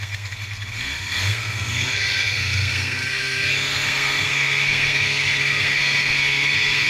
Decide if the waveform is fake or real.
fake